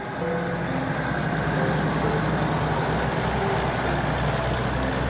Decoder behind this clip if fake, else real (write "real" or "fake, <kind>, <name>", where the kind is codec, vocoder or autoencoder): real